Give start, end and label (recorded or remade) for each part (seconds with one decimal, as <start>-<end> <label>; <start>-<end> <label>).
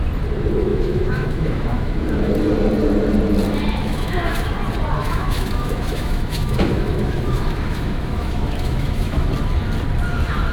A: 0.0-0.7 recorded; 0.7-2.3 remade; 2.3-3.8 recorded; 3.8-4.5 remade; 4.5-5.0 recorded; 5.0-9.3 remade; 9.3-10.5 recorded